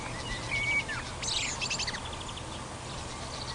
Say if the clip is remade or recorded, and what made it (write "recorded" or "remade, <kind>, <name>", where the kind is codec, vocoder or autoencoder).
recorded